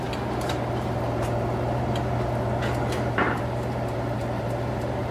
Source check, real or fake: fake